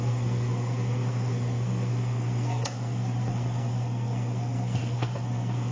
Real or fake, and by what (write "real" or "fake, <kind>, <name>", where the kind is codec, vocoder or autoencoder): fake, codec, SNAC